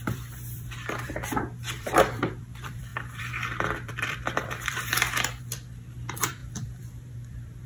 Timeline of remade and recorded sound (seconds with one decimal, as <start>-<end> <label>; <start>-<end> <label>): 0.0-4.9 remade; 4.9-5.4 recorded; 5.4-7.7 remade